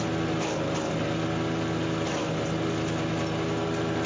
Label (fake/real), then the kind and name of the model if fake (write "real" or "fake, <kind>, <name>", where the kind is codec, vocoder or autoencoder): real